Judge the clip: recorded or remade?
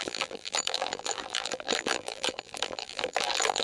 remade